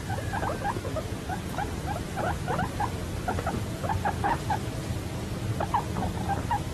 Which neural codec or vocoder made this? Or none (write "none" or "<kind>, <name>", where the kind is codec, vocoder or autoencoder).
none